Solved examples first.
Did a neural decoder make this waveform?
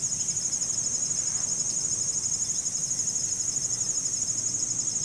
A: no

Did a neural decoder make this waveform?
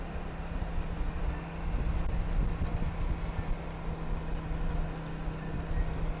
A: no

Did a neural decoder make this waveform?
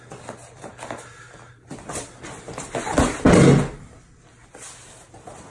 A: no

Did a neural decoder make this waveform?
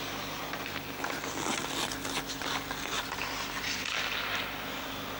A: no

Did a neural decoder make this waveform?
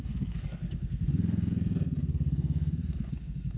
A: yes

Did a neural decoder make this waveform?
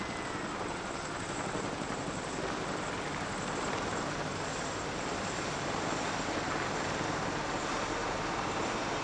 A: no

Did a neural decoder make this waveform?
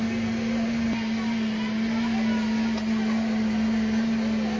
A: no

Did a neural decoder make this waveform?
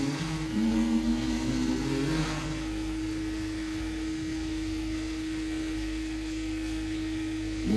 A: yes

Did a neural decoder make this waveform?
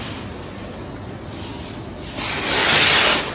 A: no